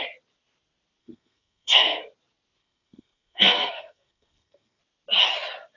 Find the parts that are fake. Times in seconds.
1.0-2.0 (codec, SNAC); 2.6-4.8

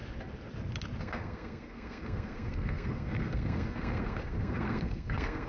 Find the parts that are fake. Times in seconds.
1.0-5.5 (codec, SNAC)

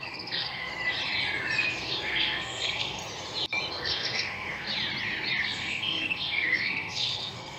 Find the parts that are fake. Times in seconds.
0.0-0.7 (codec, SNAC); 1.6-3.0; 3.7-4.7; 5.4-7.6

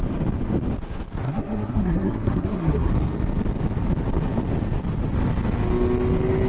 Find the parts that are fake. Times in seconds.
1.2-2.9 (codec, SNAC)

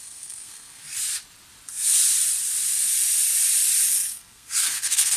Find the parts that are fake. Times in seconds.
0.0-0.8 (codec, SNAC); 3.9-5.2

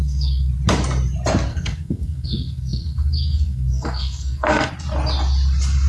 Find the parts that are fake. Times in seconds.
0.0-0.5 (codec, SNAC); 1.5-4.7